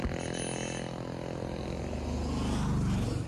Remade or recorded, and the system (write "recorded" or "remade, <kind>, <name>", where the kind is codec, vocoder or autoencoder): recorded